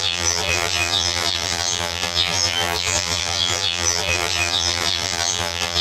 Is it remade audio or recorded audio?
remade